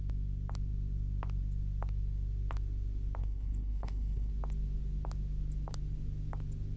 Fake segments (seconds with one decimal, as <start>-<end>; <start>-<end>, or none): 3.2-4.3